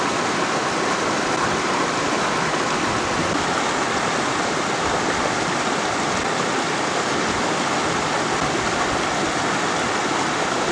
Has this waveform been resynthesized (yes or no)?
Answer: no